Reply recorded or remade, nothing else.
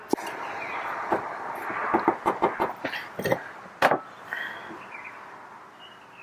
recorded